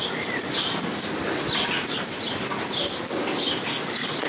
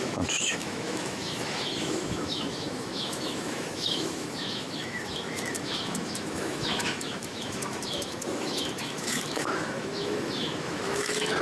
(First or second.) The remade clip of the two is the second